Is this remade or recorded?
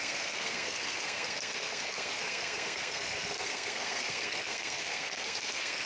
remade